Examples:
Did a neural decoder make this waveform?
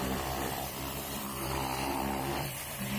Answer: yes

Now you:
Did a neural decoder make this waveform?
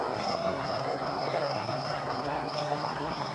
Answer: yes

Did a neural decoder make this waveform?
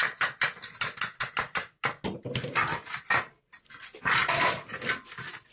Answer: no